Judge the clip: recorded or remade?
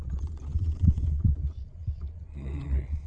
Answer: remade